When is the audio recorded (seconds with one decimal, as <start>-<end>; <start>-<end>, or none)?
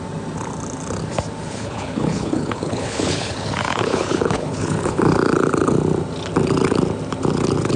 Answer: 0.0-1.4; 5.0-7.8